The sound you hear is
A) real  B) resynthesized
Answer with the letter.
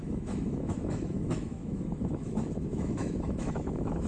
B